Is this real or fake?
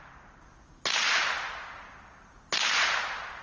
real